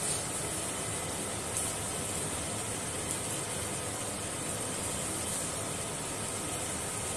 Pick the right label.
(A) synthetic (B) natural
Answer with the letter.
B